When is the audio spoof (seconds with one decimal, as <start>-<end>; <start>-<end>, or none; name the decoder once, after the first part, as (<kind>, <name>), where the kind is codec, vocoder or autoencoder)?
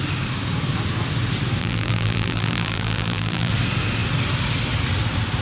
1.6-3.5 (vocoder, BigVGAN v2)